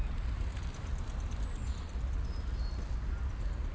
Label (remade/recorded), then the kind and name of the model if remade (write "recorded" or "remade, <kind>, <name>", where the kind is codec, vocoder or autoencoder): recorded